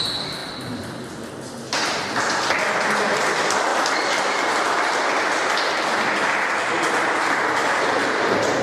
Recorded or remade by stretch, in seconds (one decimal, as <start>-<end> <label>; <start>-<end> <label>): 0.0-8.6 recorded